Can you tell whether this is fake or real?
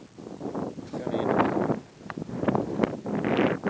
real